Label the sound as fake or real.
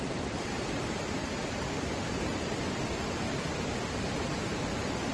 real